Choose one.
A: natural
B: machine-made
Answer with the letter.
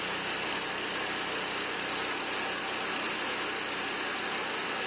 A